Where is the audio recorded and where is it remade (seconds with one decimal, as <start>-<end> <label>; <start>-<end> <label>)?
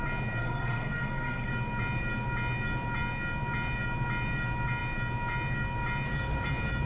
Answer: 0.0-0.4 recorded; 0.4-1.5 remade; 1.5-6.9 recorded